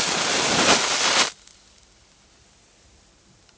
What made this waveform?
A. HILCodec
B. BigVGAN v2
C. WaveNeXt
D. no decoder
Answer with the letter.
D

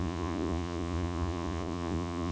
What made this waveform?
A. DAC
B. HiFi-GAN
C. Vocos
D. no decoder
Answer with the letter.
C